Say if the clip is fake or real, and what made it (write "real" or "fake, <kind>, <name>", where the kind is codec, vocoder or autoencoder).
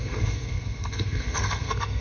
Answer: fake, codec, SNAC